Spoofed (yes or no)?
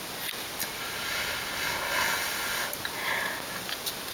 no